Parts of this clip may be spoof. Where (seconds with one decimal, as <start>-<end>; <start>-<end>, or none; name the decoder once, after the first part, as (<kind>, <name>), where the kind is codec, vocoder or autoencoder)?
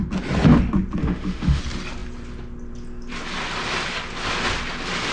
1.0-1.6 (autoencoder, DAC-VAE)